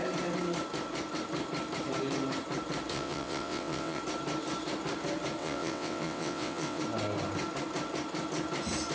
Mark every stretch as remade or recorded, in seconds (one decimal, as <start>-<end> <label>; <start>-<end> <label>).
0.0-2.9 recorded; 2.9-4.0 remade; 4.0-5.4 recorded; 5.4-6.8 remade; 6.8-8.9 recorded